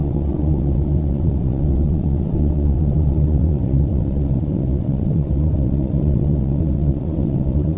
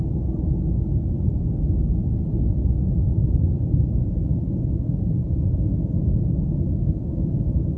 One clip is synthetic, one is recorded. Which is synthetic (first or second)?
first